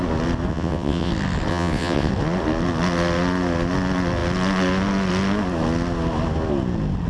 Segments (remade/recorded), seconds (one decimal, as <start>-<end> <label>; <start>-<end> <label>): 0.0-0.5 recorded; 0.5-1.1 remade; 1.1-1.5 recorded; 1.5-2.1 remade; 2.1-7.1 recorded